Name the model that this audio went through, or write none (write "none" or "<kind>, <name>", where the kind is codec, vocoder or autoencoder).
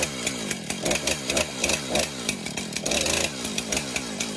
none